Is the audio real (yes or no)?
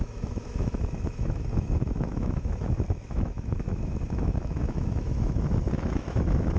no